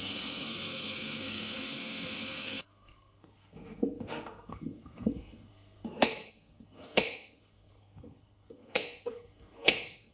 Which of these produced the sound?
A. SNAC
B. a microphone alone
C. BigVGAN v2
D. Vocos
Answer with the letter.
A